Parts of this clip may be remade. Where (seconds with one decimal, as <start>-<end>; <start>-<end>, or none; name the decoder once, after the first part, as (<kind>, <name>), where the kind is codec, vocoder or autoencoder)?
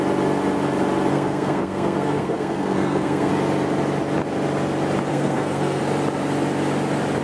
1.1-3.3 (codec, SNAC); 5.1-5.8